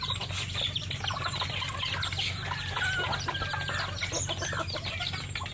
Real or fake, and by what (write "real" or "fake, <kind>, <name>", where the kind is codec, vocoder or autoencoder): real